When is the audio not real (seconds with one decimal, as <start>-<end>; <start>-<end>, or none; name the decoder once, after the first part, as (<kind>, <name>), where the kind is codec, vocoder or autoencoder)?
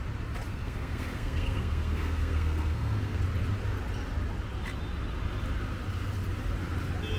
0.5-3.2 (codec, SNAC)